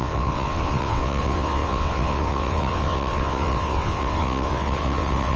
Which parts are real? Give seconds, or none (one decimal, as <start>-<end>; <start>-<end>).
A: none